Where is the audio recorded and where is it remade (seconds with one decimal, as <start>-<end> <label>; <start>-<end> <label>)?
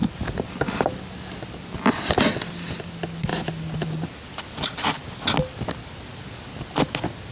0.0-7.3 recorded